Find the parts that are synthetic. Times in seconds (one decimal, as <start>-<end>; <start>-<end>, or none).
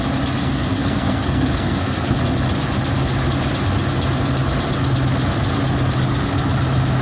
0.4-2.2